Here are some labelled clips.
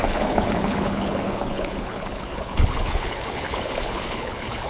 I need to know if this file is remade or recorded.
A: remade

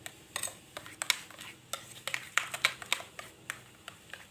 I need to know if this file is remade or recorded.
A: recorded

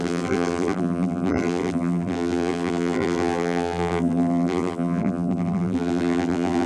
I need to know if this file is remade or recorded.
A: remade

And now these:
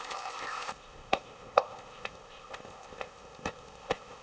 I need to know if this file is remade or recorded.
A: remade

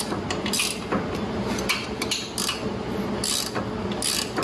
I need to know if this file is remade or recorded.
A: recorded